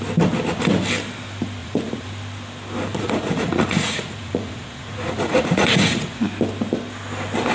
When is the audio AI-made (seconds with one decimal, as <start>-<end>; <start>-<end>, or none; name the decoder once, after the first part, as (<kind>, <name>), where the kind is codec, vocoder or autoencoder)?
1.6-2.1 (vocoder, Vocos); 2.9-6.2